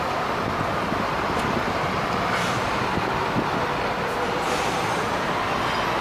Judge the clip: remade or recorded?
recorded